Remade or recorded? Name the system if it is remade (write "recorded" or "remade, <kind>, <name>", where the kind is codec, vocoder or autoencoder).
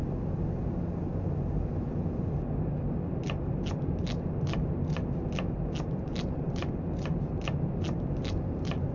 recorded